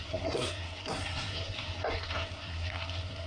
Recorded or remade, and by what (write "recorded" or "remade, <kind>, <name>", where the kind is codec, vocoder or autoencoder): remade, codec, SNAC